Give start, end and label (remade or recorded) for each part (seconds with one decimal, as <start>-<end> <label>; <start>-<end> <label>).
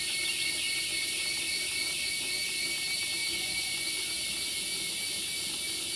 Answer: 0.0-3.2 recorded; 3.2-4.1 remade; 4.1-6.0 recorded